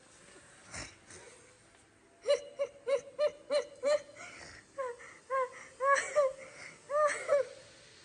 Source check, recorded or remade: recorded